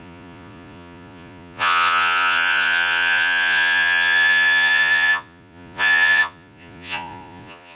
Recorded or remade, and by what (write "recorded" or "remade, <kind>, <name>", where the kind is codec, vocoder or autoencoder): remade, vocoder, Vocos